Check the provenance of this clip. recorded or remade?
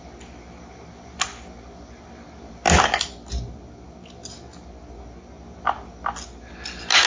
recorded